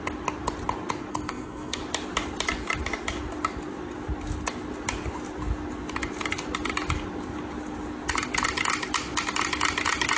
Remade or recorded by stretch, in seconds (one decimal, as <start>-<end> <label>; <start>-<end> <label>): 0.0-1.1 recorded; 1.1-1.8 remade; 1.8-10.2 recorded